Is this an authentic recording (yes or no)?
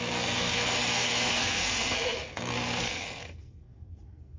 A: no